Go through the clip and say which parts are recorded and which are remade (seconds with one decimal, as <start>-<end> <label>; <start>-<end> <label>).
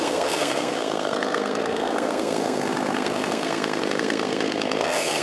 0.0-5.2 remade